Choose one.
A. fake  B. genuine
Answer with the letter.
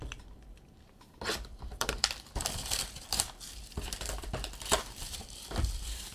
A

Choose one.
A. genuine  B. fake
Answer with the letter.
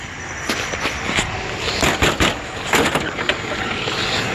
A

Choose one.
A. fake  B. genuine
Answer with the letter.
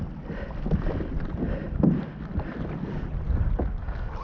B